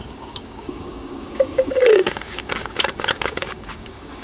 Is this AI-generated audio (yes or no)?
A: yes